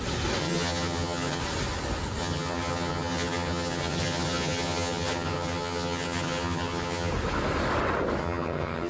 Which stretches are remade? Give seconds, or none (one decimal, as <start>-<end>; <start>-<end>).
0.4-1.4; 2.2-7.1; 8.2-8.9